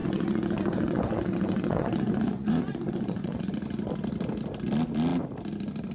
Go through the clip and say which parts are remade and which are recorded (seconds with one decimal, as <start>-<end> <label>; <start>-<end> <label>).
0.0-3.5 remade; 3.5-5.9 recorded